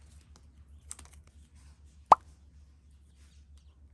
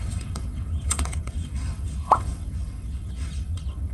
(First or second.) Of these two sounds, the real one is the first